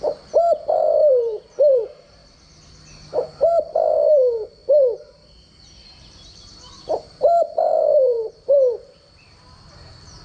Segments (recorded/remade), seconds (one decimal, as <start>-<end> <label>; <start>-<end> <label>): 0.0-2.2 remade; 2.2-3.3 recorded; 3.3-4.6 remade; 4.6-5.9 recorded; 5.9-10.2 remade